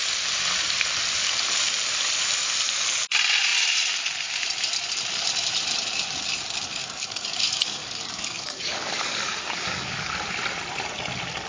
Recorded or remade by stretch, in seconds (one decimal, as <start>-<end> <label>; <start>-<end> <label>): 0.0-6.8 recorded; 6.8-10.1 remade; 10.1-11.5 recorded